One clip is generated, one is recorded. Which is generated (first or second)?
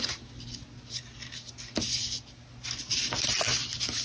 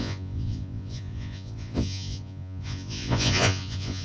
second